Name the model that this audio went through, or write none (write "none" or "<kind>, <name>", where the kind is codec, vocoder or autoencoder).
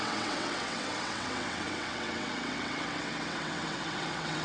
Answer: vocoder, WaveNeXt